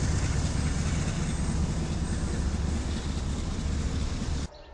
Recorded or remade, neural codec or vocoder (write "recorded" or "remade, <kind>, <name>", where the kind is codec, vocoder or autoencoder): recorded